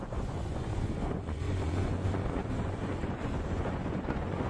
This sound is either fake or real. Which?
fake